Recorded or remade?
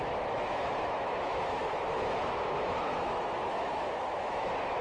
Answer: remade